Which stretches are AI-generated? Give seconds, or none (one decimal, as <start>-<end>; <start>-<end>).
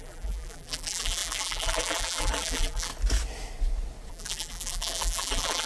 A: 0.0-2.9; 4.1-5.7